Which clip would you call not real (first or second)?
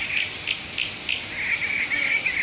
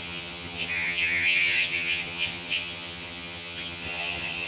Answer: second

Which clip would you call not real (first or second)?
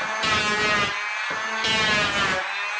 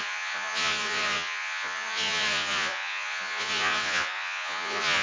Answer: second